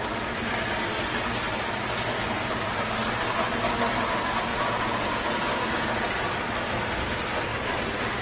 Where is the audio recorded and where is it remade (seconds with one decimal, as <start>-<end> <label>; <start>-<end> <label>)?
0.0-4.5 recorded; 4.5-5.9 remade; 5.9-8.2 recorded